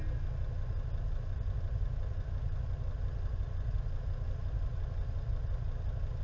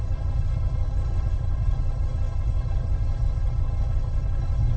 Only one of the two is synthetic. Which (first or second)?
second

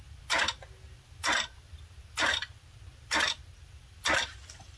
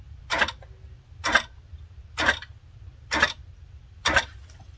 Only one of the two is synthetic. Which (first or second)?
first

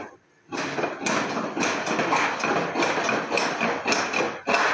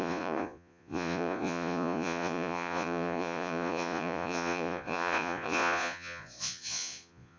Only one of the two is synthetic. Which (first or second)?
second